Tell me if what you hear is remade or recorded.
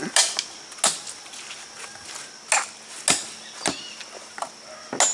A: recorded